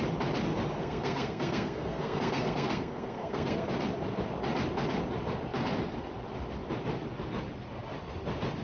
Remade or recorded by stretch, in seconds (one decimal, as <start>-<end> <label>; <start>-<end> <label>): 0.0-0.8 recorded; 0.8-3.7 remade; 3.7-8.6 recorded